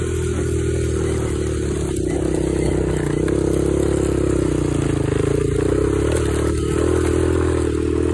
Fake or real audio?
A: real